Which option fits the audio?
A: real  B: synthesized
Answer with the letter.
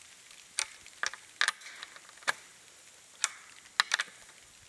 A